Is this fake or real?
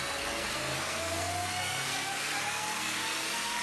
fake